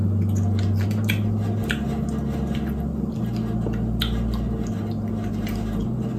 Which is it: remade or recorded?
recorded